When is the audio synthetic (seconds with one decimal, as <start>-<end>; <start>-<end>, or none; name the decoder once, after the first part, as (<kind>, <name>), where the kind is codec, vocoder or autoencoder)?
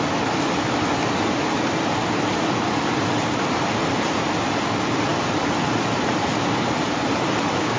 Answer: 0.0-5.1 (vocoder, BigVGAN v2); 6.1-7.8